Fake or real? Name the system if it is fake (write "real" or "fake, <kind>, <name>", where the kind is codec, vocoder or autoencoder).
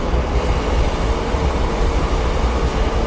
real